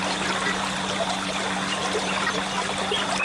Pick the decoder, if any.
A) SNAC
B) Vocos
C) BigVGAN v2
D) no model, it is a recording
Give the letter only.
D